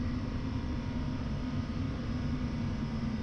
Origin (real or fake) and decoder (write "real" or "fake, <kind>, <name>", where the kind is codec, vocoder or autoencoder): real